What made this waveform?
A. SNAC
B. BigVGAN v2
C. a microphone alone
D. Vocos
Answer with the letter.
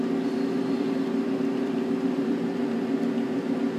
B